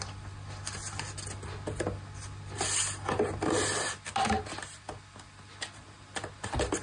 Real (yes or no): yes